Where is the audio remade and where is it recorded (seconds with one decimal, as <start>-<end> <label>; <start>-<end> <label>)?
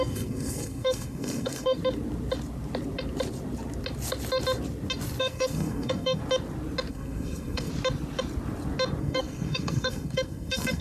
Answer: 0.0-1.8 remade; 1.8-5.2 recorded; 5.2-6.2 remade; 6.2-6.9 recorded; 6.9-7.7 remade; 7.7-9.0 recorded; 9.0-10.8 remade